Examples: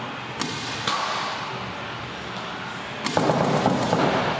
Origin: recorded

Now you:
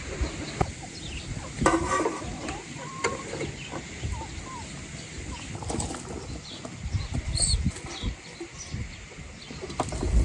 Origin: recorded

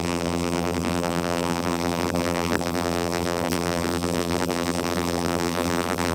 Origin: remade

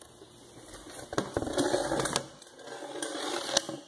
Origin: recorded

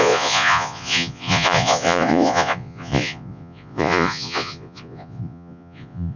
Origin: remade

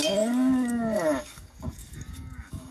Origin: remade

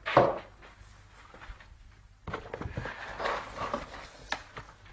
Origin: recorded